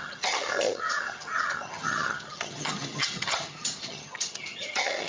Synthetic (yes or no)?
yes